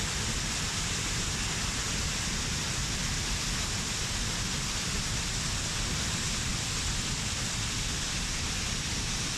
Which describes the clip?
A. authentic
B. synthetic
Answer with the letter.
A